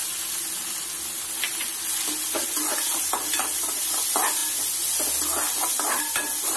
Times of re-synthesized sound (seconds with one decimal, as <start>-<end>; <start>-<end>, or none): none